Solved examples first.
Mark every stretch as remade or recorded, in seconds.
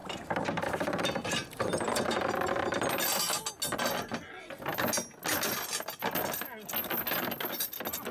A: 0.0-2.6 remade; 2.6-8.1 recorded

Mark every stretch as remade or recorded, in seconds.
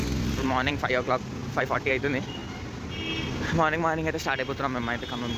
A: 0.0-0.7 remade; 0.7-5.4 recorded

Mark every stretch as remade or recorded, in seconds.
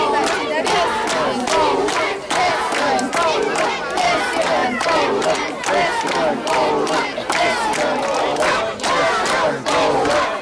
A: 0.0-10.4 recorded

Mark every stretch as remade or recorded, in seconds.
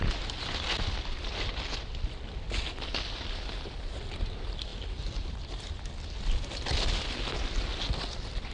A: 0.0-8.5 recorded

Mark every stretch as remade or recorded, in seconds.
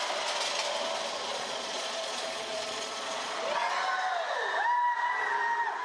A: 0.0-1.3 recorded; 1.3-3.4 remade; 3.4-5.8 recorded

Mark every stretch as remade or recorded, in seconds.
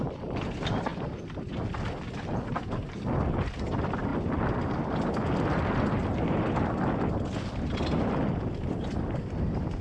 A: 0.0-4.1 remade; 4.1-7.9 recorded; 7.9-9.8 remade